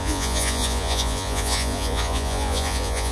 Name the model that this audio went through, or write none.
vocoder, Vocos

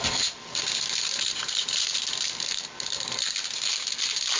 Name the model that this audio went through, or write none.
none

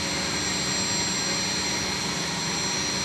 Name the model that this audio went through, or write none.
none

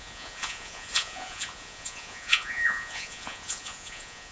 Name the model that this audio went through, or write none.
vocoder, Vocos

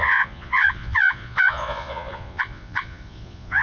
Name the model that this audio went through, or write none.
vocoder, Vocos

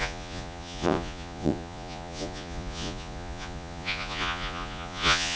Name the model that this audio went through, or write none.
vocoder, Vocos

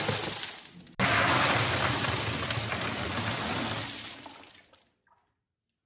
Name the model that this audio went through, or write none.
none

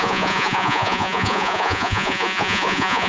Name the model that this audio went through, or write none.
vocoder, Vocos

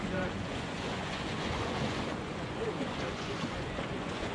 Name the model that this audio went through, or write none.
vocoder, Vocos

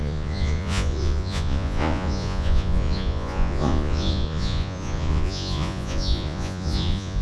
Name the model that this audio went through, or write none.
vocoder, Vocos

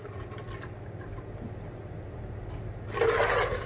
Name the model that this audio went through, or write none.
none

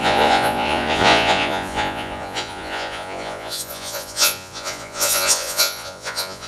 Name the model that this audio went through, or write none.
vocoder, Vocos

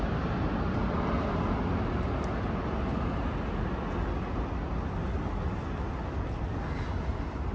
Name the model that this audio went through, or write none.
none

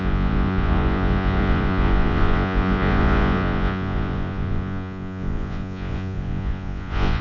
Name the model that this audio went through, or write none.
vocoder, Vocos